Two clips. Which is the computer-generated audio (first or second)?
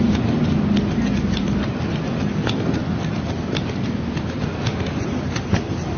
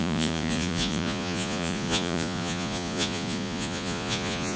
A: second